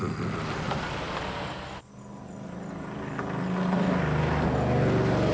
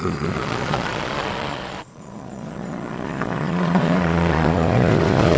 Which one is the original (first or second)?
first